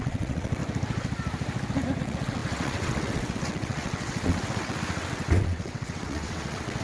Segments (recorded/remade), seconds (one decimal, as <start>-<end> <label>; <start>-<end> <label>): 0.0-0.6 remade; 0.6-2.0 recorded; 2.0-6.8 remade